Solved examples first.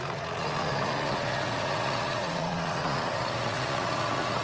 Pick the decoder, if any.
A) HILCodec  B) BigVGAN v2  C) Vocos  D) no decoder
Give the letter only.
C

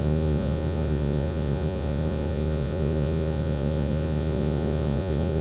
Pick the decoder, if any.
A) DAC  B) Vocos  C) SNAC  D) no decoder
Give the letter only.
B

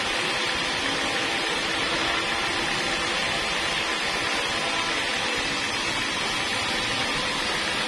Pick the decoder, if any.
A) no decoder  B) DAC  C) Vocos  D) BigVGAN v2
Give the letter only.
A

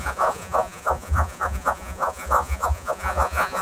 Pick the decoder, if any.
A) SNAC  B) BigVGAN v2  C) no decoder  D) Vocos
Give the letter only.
D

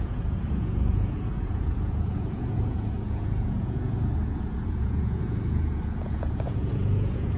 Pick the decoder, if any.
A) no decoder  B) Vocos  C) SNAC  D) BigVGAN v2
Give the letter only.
B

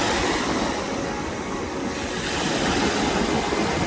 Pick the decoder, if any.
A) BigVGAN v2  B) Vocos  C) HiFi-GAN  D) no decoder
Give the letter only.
D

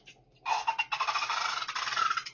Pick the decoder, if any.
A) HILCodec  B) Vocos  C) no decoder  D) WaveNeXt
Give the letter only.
C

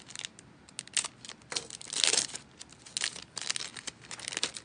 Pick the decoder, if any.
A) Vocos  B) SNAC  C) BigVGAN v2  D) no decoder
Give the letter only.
D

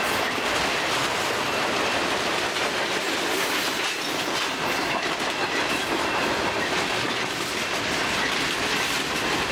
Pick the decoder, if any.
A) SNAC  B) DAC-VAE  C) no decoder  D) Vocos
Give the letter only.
C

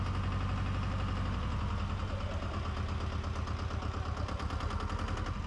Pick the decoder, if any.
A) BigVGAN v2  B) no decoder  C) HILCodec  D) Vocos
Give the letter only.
B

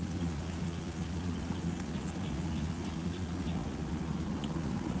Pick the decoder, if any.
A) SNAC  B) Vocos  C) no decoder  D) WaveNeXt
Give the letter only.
B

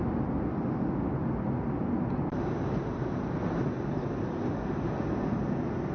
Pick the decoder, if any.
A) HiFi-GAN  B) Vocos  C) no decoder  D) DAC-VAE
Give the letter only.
C